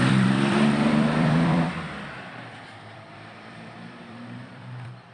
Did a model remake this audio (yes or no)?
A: yes